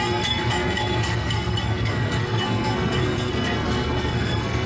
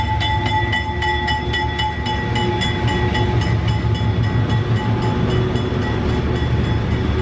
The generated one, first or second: first